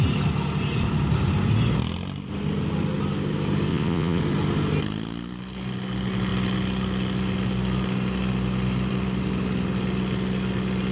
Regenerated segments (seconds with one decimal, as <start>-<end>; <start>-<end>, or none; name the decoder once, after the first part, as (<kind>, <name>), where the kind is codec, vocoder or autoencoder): 3.7-4.2 (vocoder, Vocos)